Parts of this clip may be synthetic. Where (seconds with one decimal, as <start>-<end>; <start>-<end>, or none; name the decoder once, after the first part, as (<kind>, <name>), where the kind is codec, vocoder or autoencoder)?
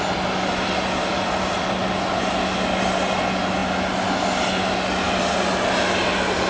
none